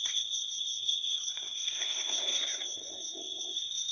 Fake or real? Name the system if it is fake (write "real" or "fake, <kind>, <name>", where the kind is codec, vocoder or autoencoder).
fake, codec, SNAC